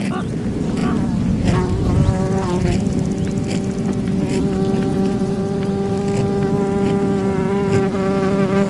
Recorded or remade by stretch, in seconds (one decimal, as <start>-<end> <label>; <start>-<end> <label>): 0.0-4.9 recorded; 4.9-5.4 remade; 5.4-8.7 recorded